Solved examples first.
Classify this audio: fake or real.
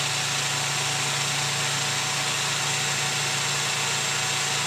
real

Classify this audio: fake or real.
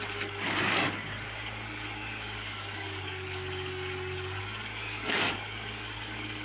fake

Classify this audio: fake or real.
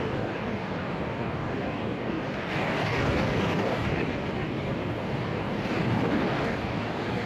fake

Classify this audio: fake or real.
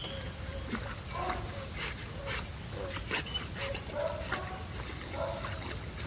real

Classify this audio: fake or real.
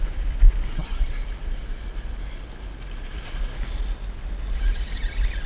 real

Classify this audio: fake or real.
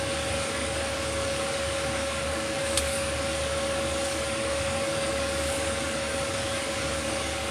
fake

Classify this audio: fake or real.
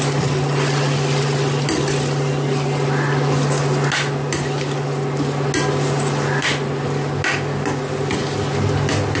real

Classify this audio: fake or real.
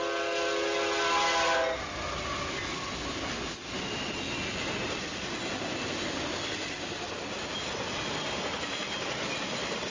real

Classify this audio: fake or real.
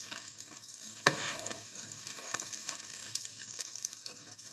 fake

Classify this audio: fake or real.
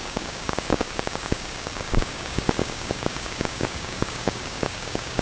fake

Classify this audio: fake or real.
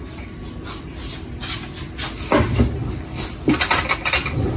real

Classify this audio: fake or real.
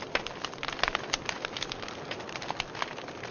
real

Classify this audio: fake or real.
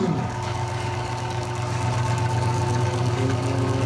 fake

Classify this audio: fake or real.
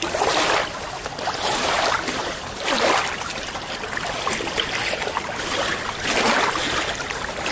real